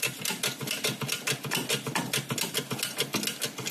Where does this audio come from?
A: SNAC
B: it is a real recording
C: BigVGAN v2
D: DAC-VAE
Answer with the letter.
B